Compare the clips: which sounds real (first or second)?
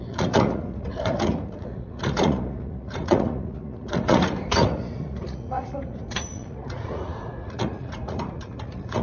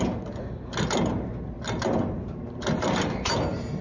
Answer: second